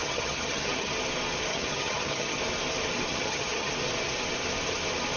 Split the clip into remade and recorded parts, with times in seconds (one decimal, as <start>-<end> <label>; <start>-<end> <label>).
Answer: 0.0-0.9 remade; 0.9-1.5 recorded; 1.5-2.4 remade; 2.4-3.1 recorded; 3.1-3.7 remade; 3.7-5.2 recorded